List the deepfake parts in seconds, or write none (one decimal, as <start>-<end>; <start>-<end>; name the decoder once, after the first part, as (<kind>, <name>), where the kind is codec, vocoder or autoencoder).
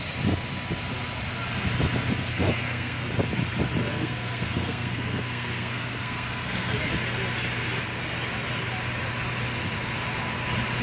2.3-3.0 (codec, SNAC); 3.9-6.8